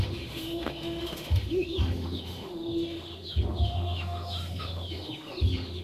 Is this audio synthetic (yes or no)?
yes